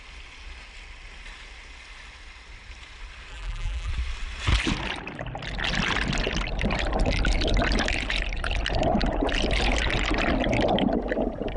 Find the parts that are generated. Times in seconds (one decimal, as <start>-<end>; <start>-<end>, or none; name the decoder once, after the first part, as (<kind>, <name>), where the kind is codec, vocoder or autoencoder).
3.3-3.9 (vocoder, BigVGAN v2)

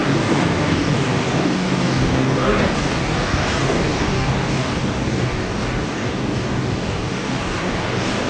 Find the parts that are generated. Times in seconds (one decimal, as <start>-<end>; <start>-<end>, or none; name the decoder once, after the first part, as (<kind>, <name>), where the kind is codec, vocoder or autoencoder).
0.0-8.3 (codec, DAC)

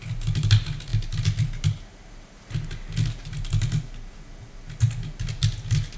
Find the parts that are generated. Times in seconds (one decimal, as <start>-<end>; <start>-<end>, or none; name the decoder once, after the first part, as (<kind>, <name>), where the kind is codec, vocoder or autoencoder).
none

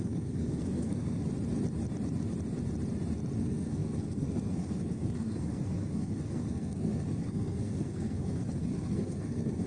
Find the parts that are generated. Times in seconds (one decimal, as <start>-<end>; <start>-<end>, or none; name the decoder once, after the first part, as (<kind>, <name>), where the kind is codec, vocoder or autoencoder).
0.0-1.2 (codec, SNAC); 3.4-9.7

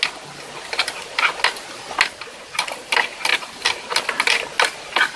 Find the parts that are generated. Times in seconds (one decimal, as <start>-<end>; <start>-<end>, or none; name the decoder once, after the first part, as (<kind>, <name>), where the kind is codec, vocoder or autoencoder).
none

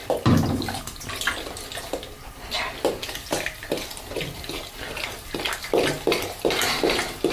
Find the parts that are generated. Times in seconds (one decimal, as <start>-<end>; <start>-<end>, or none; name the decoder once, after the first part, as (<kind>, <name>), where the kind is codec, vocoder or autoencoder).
none

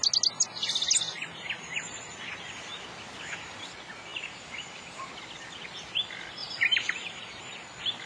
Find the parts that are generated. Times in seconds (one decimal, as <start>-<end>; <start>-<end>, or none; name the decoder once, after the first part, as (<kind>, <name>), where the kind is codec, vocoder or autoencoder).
4.1-5.1 (vocoder, BigVGAN v2); 6.4-7.4